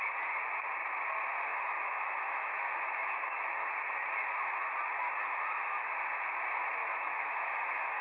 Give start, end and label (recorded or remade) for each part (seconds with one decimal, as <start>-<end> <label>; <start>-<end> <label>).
0.0-1.5 recorded; 1.5-3.7 remade; 3.7-5.2 recorded; 5.2-5.9 remade; 5.9-6.8 recorded; 6.8-8.0 remade

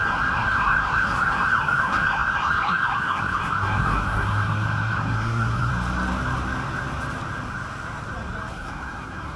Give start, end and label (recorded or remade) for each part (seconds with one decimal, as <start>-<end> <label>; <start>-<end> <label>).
0.0-5.7 remade; 5.7-8.5 recorded; 8.5-9.4 remade